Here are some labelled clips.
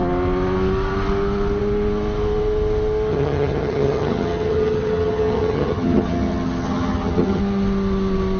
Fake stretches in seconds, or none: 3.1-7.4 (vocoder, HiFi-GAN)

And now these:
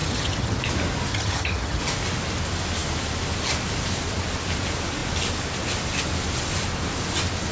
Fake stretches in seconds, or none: 0.0-0.6 (vocoder, HiFi-GAN); 1.1-1.8

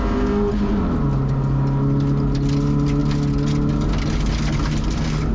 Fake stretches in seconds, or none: none

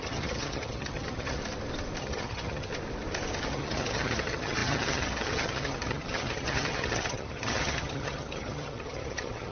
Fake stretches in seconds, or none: 0.0-1.4 (vocoder, HiFi-GAN); 2.0-2.7; 3.4-9.5

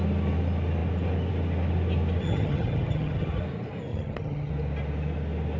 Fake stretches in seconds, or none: 2.2-3.4 (vocoder, HiFi-GAN); 3.9-4.5

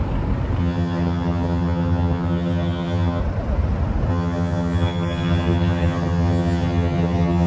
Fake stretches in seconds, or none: 0.6-3.2 (vocoder, HiFi-GAN); 4.1-7.5

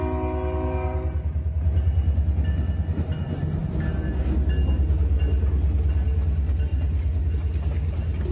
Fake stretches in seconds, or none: none